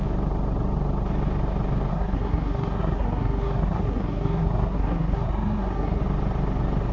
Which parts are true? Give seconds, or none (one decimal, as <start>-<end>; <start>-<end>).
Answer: 0.0-1.9; 6.0-6.9